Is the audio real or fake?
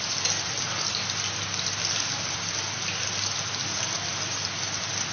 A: real